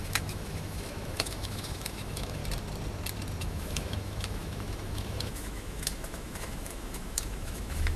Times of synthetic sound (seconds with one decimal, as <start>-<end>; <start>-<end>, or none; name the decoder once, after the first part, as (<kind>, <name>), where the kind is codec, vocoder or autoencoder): 0.0-2.4 (autoencoder, DAC-VAE); 3.4-8.0